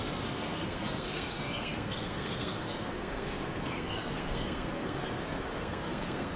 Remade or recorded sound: remade